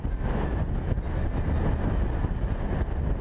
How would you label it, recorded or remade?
recorded